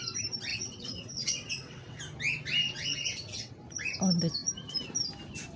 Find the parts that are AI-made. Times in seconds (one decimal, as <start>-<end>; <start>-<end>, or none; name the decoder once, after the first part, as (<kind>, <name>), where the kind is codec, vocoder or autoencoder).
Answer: 0.5-2.0 (vocoder, WaveNeXt); 2.6-3.5